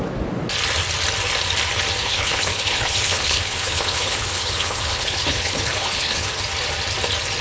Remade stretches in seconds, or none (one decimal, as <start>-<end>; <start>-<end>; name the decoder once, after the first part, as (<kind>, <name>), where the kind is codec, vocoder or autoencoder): 2.0-6.4 (codec, HILCodec)